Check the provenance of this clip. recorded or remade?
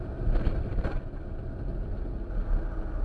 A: recorded